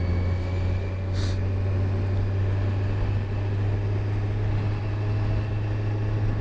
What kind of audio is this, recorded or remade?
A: recorded